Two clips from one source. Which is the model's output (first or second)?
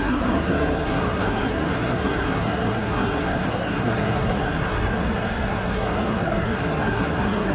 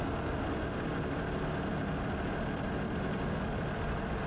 first